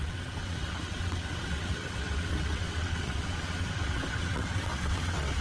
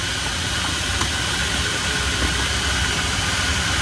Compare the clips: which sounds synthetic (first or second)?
first